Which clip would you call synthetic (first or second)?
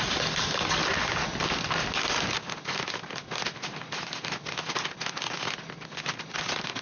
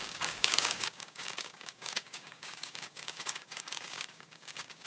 second